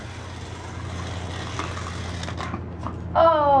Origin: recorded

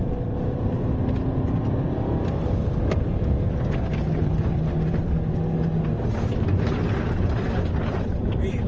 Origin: recorded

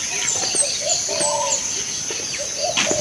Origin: recorded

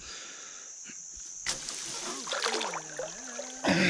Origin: recorded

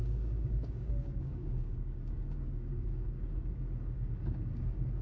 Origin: remade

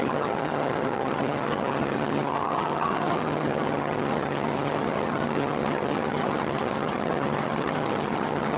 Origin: remade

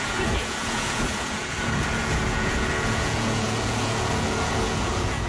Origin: remade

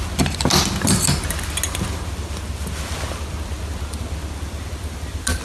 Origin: recorded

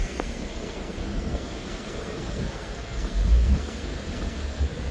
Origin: remade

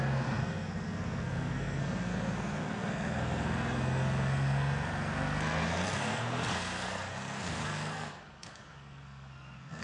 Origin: remade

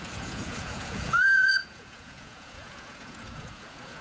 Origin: remade